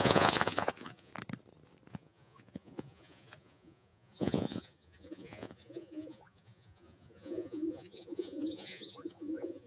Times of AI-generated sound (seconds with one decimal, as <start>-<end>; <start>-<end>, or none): 0.0-1.1; 1.9-9.7